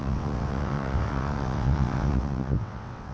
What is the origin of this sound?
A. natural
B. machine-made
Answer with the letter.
B